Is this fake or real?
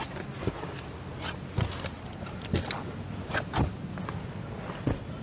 real